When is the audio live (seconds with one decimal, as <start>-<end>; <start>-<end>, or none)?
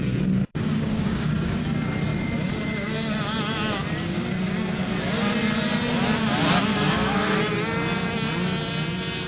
0.0-0.4; 1.6-6.7; 7.4-9.3